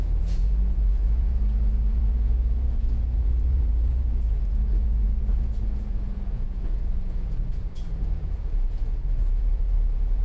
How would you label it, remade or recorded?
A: remade